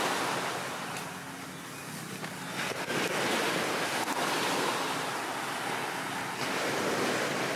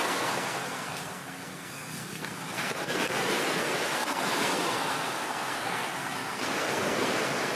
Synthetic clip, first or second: second